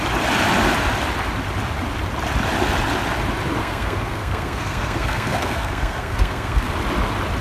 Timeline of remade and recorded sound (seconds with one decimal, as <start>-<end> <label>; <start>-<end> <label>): 0.0-3.6 recorded; 3.6-6.7 remade; 6.7-7.4 recorded